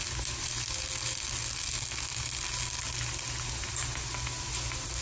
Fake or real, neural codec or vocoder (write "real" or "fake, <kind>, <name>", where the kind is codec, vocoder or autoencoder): real